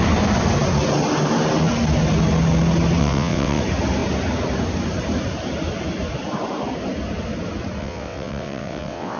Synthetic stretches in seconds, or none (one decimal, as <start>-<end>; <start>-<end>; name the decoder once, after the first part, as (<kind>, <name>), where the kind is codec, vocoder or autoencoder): 3.0-3.6 (vocoder, WaveNeXt); 7.8-9.2